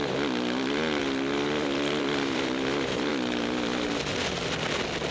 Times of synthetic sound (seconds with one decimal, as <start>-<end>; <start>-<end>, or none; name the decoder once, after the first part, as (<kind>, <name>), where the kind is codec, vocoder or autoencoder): 1.0-3.1 (vocoder, BigVGAN v2)

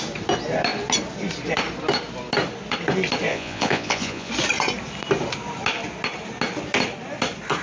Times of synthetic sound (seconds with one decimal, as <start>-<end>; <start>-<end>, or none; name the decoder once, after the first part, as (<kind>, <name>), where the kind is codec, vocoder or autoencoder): 3.3-4.3 (vocoder, Vocos)